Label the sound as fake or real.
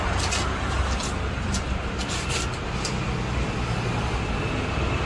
real